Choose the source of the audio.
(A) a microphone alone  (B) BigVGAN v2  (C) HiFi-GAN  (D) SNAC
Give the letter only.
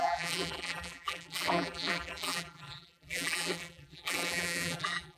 B